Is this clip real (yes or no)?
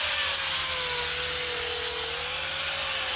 yes